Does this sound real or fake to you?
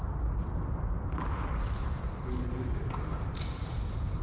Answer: real